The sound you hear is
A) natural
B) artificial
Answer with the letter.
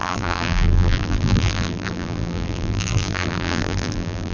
B